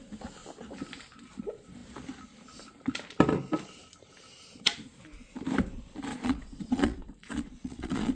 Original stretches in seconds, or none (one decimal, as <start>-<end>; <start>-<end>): 0.0-6.1